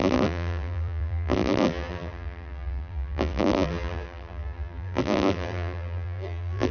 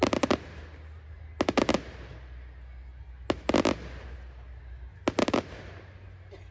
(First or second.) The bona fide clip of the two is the second